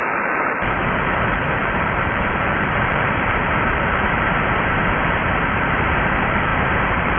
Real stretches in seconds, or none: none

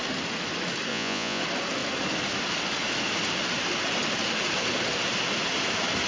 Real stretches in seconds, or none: 0.0-0.9; 1.4-6.1

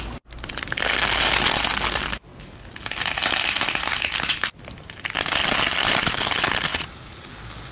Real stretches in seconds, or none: 0.0-6.7; 7.3-7.7